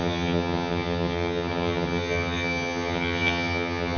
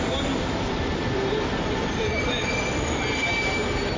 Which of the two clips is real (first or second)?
second